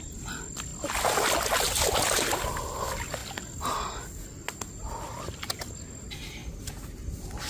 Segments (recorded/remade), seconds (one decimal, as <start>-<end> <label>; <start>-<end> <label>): 0.0-7.5 recorded